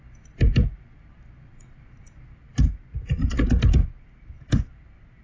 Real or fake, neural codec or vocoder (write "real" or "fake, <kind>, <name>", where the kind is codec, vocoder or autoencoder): real